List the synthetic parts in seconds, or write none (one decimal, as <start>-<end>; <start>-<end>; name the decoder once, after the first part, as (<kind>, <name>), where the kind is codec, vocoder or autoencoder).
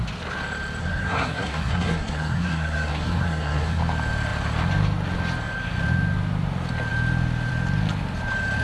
0.8-3.8 (codec, SNAC)